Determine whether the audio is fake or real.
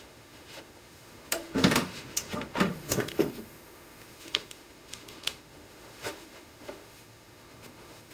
fake